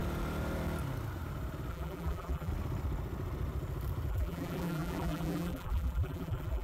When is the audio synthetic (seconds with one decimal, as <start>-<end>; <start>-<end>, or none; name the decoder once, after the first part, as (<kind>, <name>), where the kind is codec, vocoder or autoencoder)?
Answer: 1.7-2.5 (vocoder, BigVGAN v2); 4.1-6.6